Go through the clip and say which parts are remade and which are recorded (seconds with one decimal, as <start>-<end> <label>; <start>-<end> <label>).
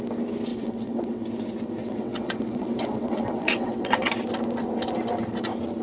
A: 0.0-0.5 recorded; 0.5-1.2 remade; 1.2-1.8 recorded; 1.8-4.1 remade; 4.1-5.8 recorded